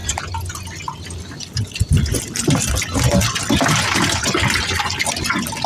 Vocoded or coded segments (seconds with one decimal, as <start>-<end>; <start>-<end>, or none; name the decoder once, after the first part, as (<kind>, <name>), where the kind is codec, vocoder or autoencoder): none